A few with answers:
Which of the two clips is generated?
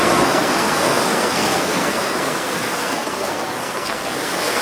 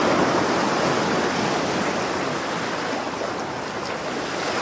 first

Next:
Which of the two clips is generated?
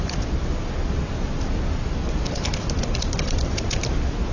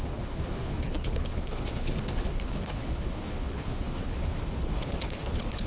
second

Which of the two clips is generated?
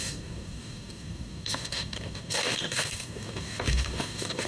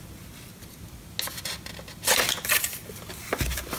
first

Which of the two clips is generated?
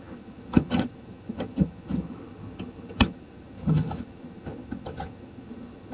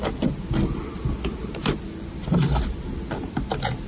first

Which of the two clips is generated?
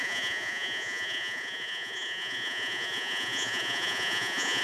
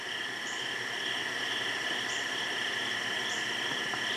first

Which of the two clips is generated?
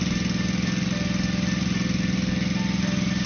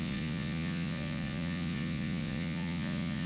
second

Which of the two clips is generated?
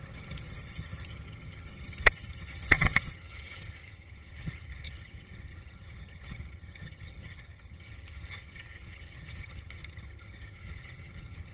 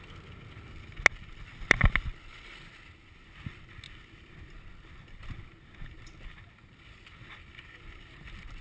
first